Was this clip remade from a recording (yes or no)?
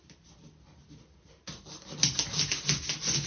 no